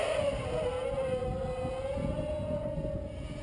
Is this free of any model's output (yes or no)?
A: yes